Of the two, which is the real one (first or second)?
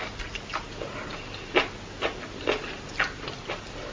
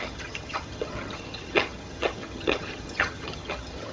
first